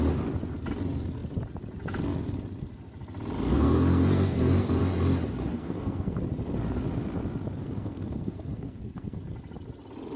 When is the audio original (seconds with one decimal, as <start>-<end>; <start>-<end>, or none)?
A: 0.0-3.5; 4.8-5.5; 6.2-7.6; 9.2-10.2